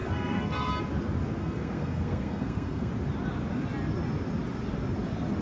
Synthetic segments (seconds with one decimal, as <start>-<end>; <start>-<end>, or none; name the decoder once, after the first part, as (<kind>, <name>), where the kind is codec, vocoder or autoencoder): 0.0-0.7 (codec, SNAC); 1.4-2.9